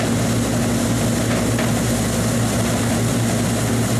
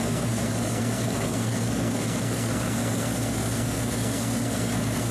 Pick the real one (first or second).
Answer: first